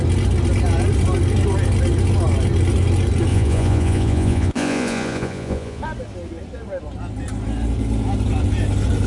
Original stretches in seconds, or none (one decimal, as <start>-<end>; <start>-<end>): 0.0-3.3; 5.8-9.1

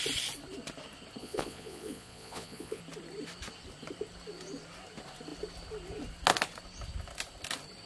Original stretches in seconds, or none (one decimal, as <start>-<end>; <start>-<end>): 0.0-1.2; 2.8-7.9

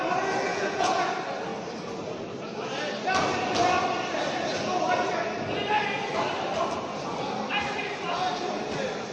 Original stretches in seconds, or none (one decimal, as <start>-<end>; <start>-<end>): 0.0-0.5; 1.1-9.1

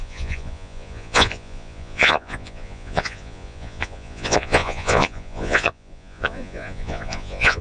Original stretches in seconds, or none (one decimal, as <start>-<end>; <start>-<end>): none

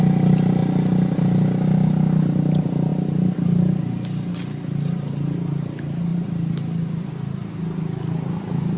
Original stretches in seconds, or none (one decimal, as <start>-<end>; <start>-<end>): 0.0-8.8

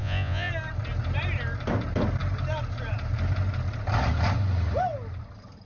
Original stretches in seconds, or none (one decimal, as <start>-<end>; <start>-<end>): 0.5-5.7